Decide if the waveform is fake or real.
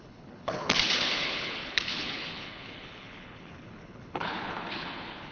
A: fake